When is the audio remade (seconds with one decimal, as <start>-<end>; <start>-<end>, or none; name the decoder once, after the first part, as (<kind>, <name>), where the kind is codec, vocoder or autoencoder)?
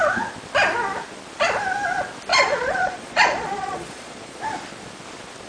2.3-4.4 (vocoder, Vocos)